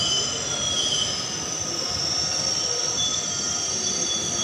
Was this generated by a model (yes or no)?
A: no